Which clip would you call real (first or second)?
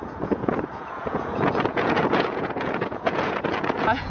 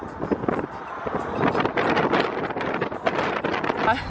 second